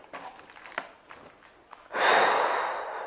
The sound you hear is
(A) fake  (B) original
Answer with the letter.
B